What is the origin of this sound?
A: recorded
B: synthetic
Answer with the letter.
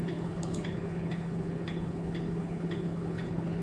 B